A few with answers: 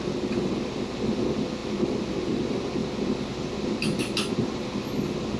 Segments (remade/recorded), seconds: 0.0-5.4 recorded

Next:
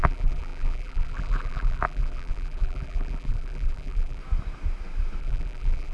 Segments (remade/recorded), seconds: 0.0-4.2 remade; 4.2-5.2 recorded; 5.2-5.9 remade

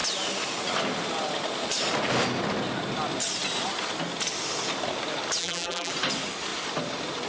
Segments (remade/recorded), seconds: 0.0-5.4 recorded; 5.4-5.9 remade; 5.9-7.3 recorded

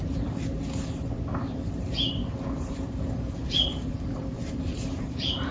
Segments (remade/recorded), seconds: 0.0-0.4 remade; 0.4-1.5 recorded; 1.5-5.5 remade

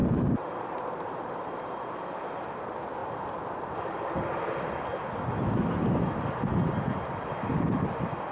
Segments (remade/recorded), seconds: 0.0-1.9 remade; 1.9-3.0 recorded; 3.0-4.1 remade; 4.1-6.5 recorded; 6.5-7.3 remade; 7.3-8.3 recorded

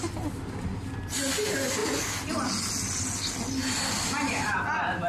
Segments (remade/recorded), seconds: 0.0-5.1 recorded

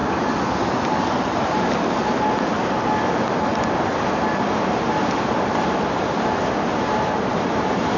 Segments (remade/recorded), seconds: 0.0-1.0 recorded; 1.0-2.5 remade; 2.5-4.6 recorded; 4.6-8.0 remade

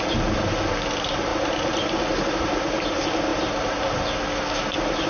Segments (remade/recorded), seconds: 0.0-5.1 recorded